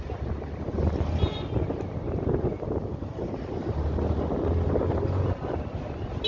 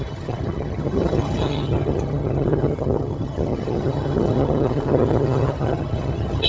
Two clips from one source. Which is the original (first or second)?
first